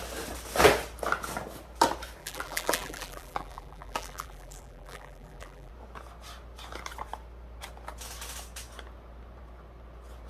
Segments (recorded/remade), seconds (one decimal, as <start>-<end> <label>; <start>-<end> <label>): 0.0-2.2 recorded; 2.2-5.7 remade; 5.7-10.3 recorded

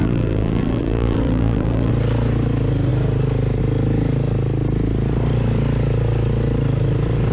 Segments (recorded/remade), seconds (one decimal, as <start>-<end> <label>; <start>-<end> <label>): 0.0-1.9 remade; 1.9-7.3 recorded

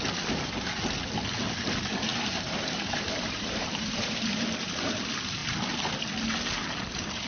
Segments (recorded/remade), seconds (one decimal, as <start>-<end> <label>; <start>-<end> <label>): 0.0-2.1 recorded; 2.1-4.6 remade; 4.6-7.3 recorded

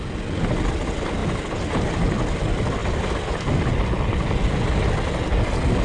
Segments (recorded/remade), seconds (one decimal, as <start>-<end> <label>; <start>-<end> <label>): 0.0-5.8 recorded